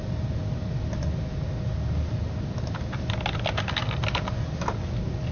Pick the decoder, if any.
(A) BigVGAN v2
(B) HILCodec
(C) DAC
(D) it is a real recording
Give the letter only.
D